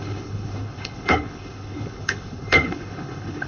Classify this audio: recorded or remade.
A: remade